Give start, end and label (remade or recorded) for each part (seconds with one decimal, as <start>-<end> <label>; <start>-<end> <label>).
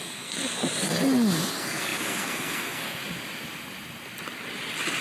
0.0-0.6 remade; 0.6-1.5 recorded; 1.5-3.0 remade; 3.0-5.0 recorded